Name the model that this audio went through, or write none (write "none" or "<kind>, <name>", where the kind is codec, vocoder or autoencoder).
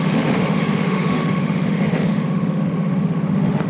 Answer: autoencoder, DAC-VAE